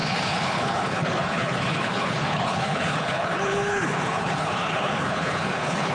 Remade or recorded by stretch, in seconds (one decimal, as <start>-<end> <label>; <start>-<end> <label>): 0.0-5.9 remade